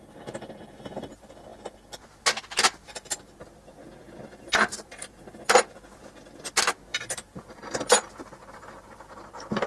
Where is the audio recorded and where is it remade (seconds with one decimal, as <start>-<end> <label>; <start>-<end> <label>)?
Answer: 0.0-4.3 recorded; 4.3-5.2 remade; 5.2-6.9 recorded; 6.9-7.8 remade; 7.8-9.7 recorded